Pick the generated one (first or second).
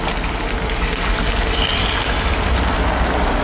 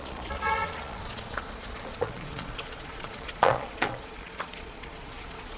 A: second